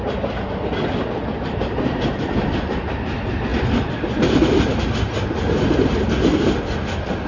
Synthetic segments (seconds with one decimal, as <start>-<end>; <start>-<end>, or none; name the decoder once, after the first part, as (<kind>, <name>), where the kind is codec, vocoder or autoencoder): none